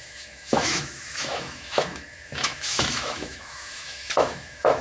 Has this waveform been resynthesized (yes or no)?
yes